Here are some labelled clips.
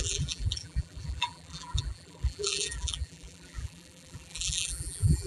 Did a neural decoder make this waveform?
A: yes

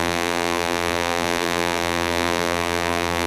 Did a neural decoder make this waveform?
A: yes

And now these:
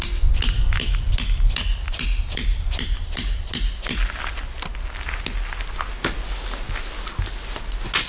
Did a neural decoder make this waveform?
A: no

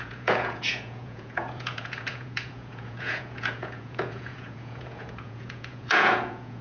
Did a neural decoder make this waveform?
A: yes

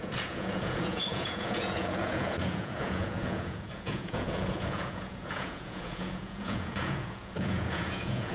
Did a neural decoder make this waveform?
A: yes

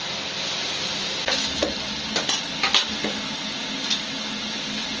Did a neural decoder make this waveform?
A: no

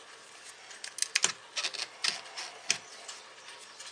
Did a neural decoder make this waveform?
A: no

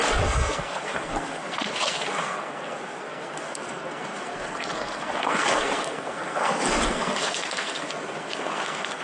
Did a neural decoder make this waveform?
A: yes